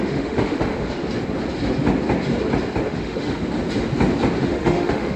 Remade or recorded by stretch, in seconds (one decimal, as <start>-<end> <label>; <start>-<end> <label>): 0.0-1.0 remade; 1.0-2.9 recorded; 2.9-3.4 remade; 3.4-4.4 recorded; 4.4-5.2 remade